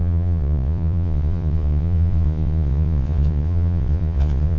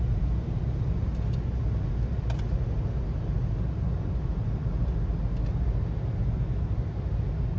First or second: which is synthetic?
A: first